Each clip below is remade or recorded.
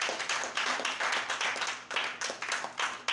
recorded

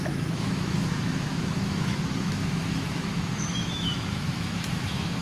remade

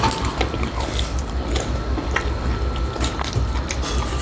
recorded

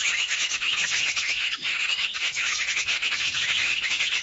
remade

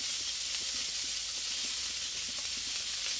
recorded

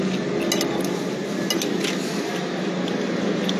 recorded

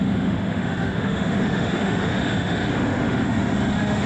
remade